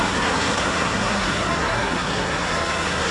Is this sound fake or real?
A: fake